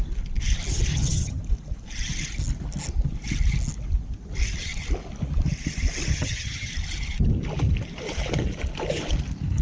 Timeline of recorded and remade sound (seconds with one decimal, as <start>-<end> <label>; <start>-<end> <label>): 0.0-0.9 recorded; 0.9-1.4 remade; 1.4-6.1 recorded; 6.1-6.7 remade; 6.7-9.6 recorded